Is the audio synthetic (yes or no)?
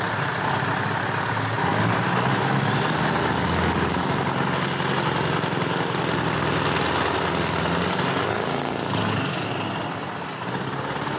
no